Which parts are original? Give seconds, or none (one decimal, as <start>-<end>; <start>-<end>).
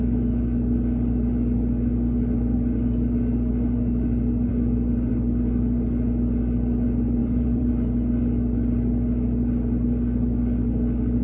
0.0-7.2; 7.7-11.2